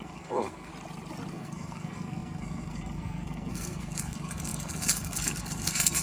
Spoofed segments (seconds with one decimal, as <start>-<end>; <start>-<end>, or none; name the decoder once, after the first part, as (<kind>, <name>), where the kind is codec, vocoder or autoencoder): 0.0-0.7 (codec, SNAC); 1.3-6.0